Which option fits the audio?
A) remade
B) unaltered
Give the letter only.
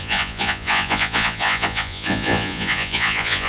A